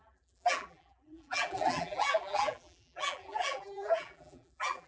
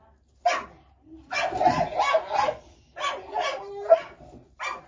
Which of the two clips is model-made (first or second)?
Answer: first